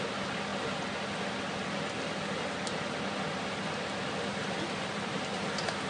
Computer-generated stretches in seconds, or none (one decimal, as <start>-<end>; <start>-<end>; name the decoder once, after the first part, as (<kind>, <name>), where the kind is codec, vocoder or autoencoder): 4.4-5.2 (vocoder, BigVGAN v2)